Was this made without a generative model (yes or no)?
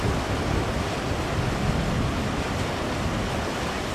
yes